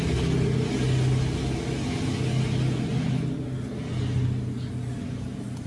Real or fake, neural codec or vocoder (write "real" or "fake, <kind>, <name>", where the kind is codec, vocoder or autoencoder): real